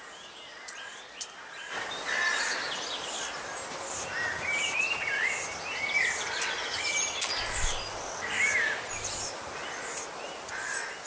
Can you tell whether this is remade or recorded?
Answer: recorded